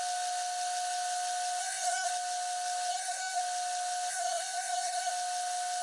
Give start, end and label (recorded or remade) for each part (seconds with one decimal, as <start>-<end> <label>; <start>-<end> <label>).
0.0-1.6 recorded; 1.6-2.1 remade; 2.1-2.9 recorded; 2.9-3.4 remade; 3.4-4.1 recorded; 4.1-5.1 remade; 5.1-5.8 recorded